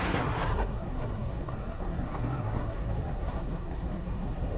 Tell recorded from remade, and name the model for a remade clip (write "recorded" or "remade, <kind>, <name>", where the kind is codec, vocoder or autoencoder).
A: remade, codec, SNAC